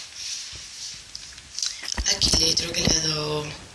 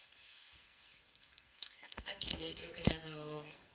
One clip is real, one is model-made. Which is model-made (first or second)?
second